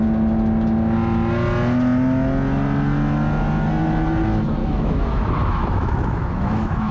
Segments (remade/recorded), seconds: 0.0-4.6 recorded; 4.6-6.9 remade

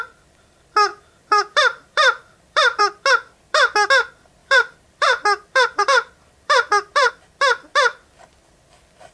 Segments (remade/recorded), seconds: 0.0-0.9 recorded; 0.9-2.8 remade; 2.8-4.4 recorded; 4.4-7.1 remade; 7.1-9.1 recorded

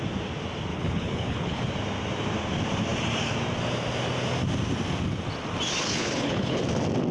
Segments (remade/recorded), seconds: 0.0-0.7 recorded; 0.7-1.6 remade; 1.6-5.8 recorded; 5.8-6.6 remade; 6.6-7.1 recorded

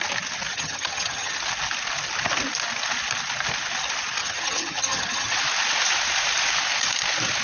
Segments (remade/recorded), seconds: 0.0-0.5 recorded; 0.5-1.4 remade; 1.4-4.2 recorded; 4.2-5.4 remade; 5.4-7.4 recorded

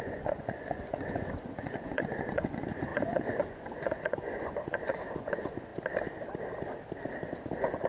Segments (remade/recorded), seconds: 0.0-5.7 remade; 5.7-7.9 recorded